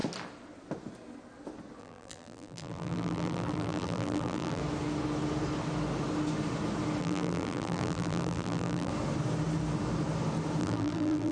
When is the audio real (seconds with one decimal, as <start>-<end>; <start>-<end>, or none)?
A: 0.0-1.8; 4.6-7.0; 8.9-10.6